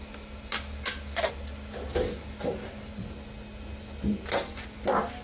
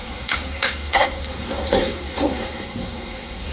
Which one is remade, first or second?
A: second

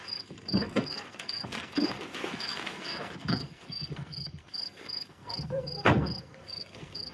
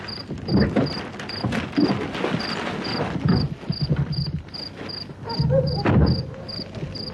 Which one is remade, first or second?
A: first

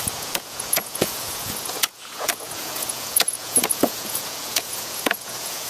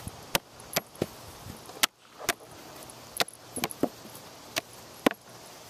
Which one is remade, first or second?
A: first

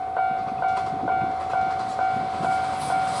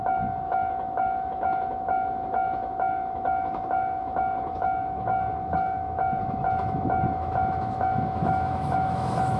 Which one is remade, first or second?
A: second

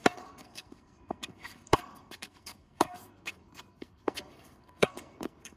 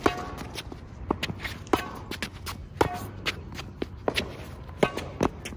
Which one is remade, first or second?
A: first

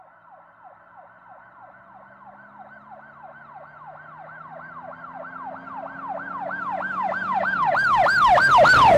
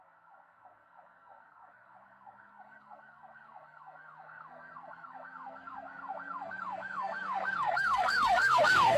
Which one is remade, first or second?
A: second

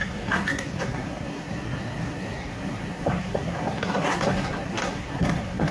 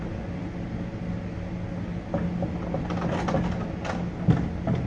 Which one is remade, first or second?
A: first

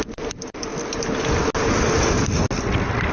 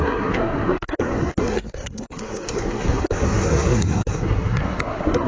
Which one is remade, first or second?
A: second